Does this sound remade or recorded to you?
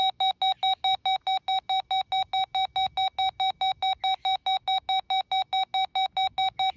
recorded